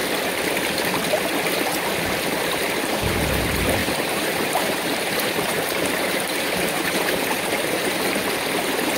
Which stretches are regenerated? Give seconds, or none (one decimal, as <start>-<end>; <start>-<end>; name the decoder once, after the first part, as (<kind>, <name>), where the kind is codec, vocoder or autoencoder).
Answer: 3.8-8.0 (vocoder, BigVGAN v2)

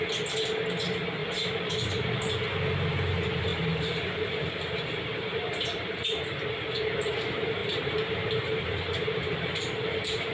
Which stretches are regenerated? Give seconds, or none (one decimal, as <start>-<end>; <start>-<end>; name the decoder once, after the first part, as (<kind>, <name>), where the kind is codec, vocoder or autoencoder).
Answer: 1.2-2.3 (vocoder, BigVGAN v2); 3.5-6.5; 7.6-10.3

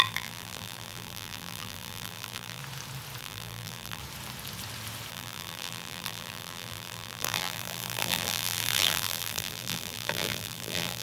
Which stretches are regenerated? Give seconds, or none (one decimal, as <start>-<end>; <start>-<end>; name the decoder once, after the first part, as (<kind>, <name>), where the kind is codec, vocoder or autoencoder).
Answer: 0.0-2.6 (vocoder, BigVGAN v2); 3.2-4.0; 5.1-11.0

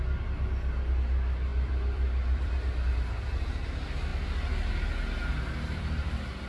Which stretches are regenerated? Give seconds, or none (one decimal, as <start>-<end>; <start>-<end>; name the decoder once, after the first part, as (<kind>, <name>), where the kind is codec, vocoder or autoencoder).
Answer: 1.5-2.5 (vocoder, BigVGAN v2); 5.3-6.5